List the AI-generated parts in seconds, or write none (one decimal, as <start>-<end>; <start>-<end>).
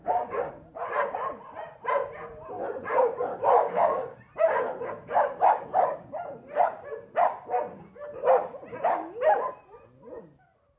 0.0-0.5; 3.3-4.2